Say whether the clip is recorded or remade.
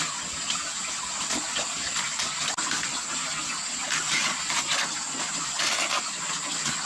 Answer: recorded